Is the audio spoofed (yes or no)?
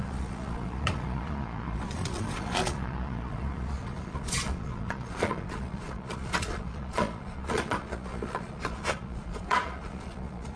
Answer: yes